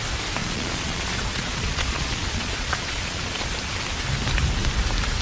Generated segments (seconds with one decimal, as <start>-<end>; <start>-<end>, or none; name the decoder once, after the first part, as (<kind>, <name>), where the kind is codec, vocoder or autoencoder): 0.4-3.5 (vocoder, Vocos)